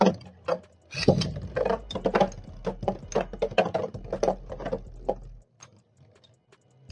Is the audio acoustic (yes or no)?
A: yes